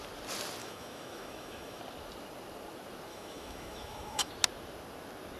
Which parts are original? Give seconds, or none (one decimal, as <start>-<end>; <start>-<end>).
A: 0.0-0.6; 1.8-3.1; 4.3-5.4